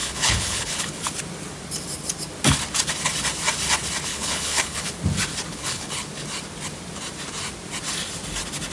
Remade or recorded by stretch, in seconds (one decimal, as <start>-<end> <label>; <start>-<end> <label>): 0.0-1.0 remade; 1.0-4.1 recorded; 4.1-4.9 remade; 4.9-5.5 recorded; 5.5-6.1 remade; 6.1-8.7 recorded